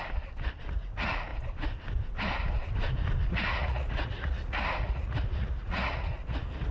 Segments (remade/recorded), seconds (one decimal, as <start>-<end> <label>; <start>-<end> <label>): 0.0-0.6 recorded; 0.6-1.3 remade; 1.3-3.3 recorded; 3.3-6.7 remade